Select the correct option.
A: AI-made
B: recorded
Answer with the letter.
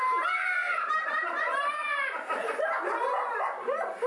A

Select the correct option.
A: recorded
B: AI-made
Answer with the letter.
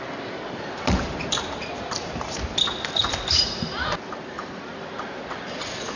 B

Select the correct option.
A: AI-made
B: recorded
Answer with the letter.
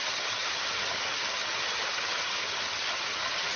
A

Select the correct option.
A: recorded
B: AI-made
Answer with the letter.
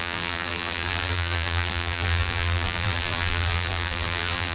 B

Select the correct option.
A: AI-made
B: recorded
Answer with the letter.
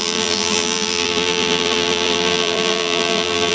A